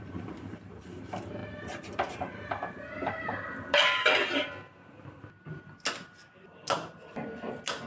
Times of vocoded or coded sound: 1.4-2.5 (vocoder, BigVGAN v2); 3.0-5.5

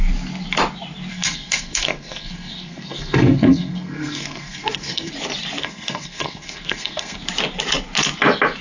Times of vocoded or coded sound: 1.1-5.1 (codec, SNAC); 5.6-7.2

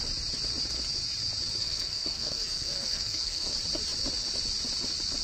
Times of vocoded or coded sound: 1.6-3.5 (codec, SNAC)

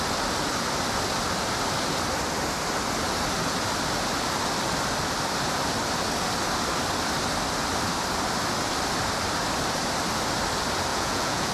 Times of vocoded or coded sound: 10.9-11.5 (vocoder, Vocos)

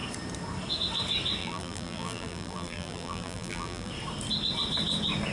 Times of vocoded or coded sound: 1.4-3.9 (vocoder, BigVGAN v2)

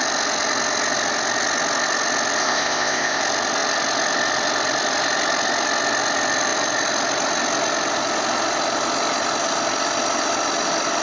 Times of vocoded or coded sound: 2.4-3.2 (codec, ZipCodec)

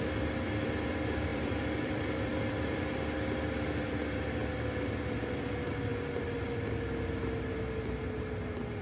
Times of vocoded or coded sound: 1.3-3.0 (vocoder, BigVGAN v2)